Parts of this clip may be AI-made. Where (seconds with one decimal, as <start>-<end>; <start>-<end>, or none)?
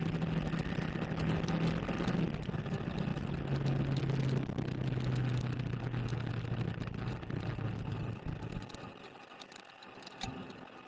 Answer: none